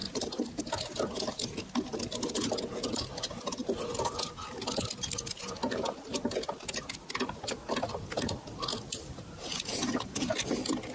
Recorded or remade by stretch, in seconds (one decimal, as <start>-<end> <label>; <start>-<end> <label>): 0.0-10.9 recorded